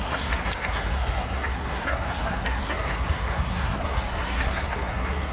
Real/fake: fake